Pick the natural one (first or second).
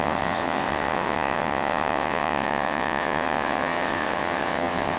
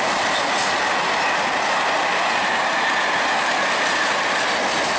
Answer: second